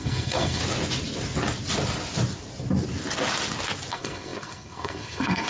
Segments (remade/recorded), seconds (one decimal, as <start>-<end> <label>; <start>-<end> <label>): 0.0-0.6 remade; 0.6-3.9 recorded; 3.9-5.5 remade